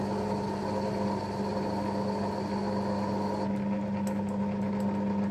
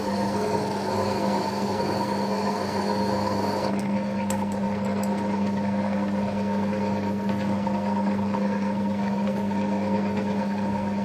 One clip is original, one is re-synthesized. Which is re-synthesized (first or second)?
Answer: second